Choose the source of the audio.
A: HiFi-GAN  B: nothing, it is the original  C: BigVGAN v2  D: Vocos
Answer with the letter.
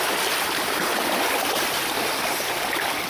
C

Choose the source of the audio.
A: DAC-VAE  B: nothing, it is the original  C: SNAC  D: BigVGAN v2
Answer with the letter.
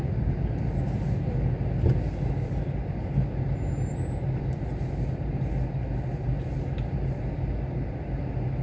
B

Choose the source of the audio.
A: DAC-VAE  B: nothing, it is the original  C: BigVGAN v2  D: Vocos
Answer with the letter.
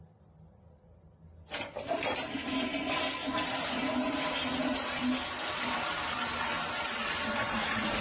B